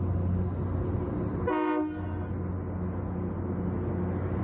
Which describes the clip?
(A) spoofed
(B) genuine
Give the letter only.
B